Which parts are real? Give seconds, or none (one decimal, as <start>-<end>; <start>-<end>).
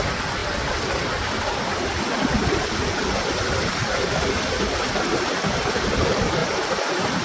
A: 0.0-0.4; 4.5-6.4